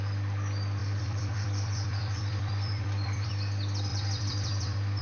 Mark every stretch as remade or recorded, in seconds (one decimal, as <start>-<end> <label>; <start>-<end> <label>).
0.0-0.8 recorded; 0.8-3.3 remade; 3.3-3.9 recorded; 3.9-5.0 remade